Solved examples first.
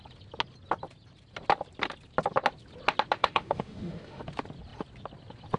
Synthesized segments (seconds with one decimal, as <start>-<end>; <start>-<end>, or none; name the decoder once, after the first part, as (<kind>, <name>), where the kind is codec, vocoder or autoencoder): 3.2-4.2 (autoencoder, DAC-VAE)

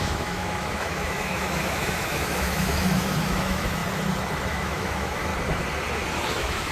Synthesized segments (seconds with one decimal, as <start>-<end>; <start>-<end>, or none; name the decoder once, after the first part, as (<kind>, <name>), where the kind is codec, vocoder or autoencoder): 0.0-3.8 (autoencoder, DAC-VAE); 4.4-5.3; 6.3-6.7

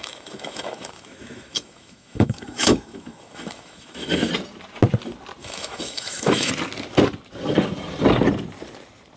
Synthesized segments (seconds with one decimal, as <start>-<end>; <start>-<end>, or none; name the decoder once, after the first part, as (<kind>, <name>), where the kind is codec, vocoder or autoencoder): 0.0-4.3 (autoencoder, DAC-VAE); 5.4-6.5